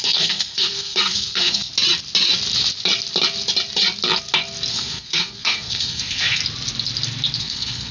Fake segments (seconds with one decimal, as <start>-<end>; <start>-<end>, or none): 0.0-1.7; 4.7-6.4; 7.4-7.9